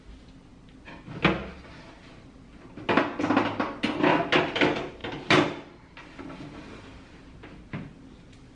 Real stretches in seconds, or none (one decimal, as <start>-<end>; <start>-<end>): 0.0-8.6